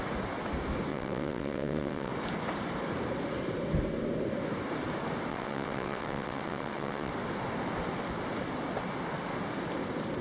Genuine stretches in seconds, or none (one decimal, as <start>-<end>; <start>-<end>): 0.0-0.9; 2.1-5.3; 7.1-10.2

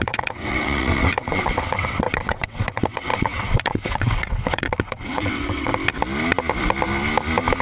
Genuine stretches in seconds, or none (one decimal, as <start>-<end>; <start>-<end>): 5.7-7.6

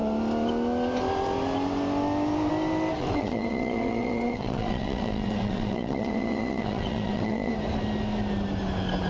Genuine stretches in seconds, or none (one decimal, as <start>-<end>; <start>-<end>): 0.0-3.0; 7.5-9.1

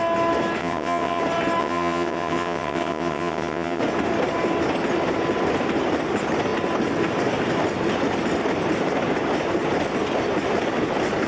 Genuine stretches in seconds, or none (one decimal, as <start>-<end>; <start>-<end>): 0.0-0.6; 1.2-1.6; 3.8-11.3

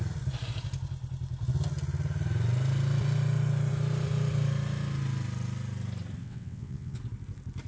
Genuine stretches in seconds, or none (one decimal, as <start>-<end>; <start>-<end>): 0.0-6.2; 7.0-7.7

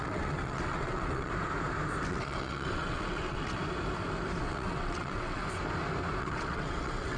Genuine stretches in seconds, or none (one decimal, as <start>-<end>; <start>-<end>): 1.3-2.1; 3.6-4.4; 5.4-6.2

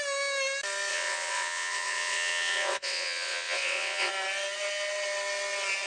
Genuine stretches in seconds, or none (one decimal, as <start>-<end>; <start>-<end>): 0.0-0.9; 4.1-5.9